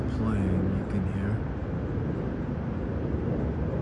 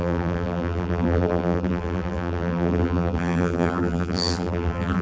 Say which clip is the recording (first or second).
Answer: first